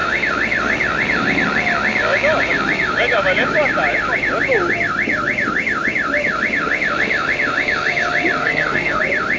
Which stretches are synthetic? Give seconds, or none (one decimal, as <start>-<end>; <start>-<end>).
8.4-9.0